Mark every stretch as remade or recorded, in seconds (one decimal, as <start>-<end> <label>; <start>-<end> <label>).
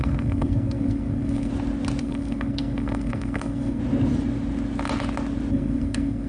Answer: 0.0-1.5 remade; 1.5-2.0 recorded; 2.0-3.8 remade; 3.8-5.5 recorded; 5.5-6.3 remade